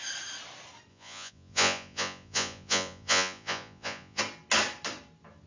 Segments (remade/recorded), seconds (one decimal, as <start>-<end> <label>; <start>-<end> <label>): 0.0-0.9 recorded; 0.9-4.2 remade; 4.2-5.5 recorded

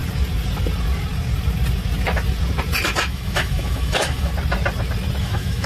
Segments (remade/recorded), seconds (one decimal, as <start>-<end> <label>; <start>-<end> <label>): 0.0-3.0 recorded; 3.0-4.3 remade; 4.3-5.2 recorded; 5.2-5.7 remade

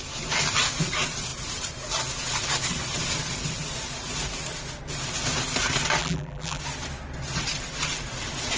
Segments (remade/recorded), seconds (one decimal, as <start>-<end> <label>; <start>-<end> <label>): 0.0-6.0 recorded; 6.0-6.6 remade; 6.6-8.6 recorded

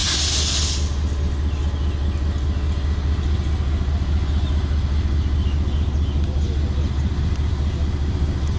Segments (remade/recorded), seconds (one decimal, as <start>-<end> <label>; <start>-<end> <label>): 0.0-8.6 recorded